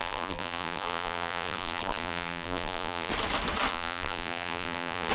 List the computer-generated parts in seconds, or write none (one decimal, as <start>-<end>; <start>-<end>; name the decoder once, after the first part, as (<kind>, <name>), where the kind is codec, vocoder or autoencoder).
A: 0.0-3.1 (vocoder, BigVGAN v2); 3.7-5.1